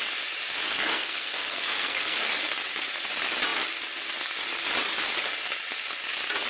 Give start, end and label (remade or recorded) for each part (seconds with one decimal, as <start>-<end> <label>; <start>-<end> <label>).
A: 0.0-0.7 recorded; 0.7-2.3 remade; 2.3-6.5 recorded